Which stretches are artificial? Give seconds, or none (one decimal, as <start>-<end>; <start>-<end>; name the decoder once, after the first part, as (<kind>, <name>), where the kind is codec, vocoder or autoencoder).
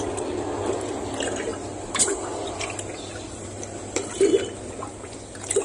1.5-4.7 (vocoder, BigVGAN v2)